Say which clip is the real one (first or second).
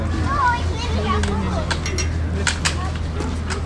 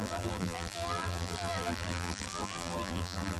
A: first